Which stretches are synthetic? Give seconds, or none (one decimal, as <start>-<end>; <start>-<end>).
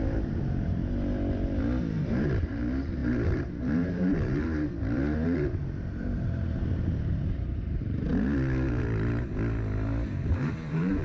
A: 0.0-0.8; 1.8-8.1; 10.3-11.0